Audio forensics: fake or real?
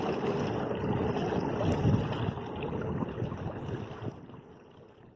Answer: real